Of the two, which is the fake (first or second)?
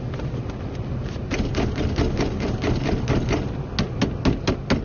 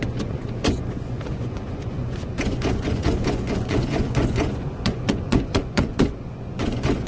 second